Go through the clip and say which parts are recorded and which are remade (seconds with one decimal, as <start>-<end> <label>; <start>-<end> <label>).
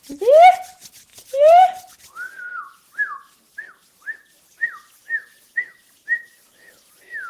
0.0-1.1 recorded; 1.1-1.9 remade; 1.9-7.3 recorded